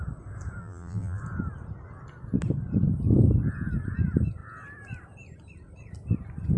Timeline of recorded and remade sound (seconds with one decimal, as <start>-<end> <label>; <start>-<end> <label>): 0.0-0.6 recorded; 0.6-1.2 remade; 1.2-6.6 recorded